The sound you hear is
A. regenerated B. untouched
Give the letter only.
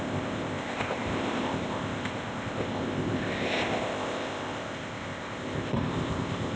A